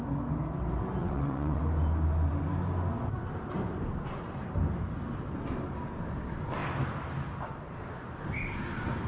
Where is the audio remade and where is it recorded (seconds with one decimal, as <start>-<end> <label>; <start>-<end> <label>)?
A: 0.0-1.0 recorded; 1.0-1.6 remade; 1.6-9.1 recorded